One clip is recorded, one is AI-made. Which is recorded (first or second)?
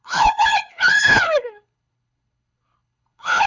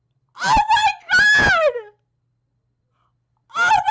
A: second